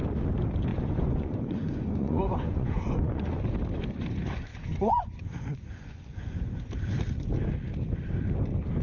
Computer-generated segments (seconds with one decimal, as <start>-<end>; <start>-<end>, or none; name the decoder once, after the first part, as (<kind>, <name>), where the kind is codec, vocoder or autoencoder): 0.7-3.4 (vocoder, Vocos); 4.5-6.7